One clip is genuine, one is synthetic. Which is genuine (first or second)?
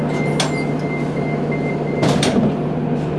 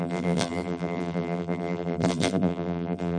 first